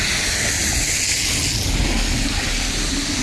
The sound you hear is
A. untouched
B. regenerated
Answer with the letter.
A